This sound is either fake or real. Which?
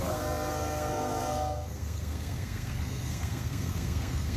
fake